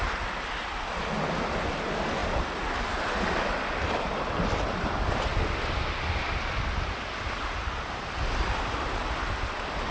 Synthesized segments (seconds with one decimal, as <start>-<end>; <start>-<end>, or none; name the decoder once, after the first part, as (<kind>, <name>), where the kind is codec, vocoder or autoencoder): none